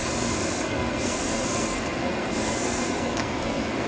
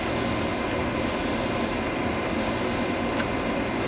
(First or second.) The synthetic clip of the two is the first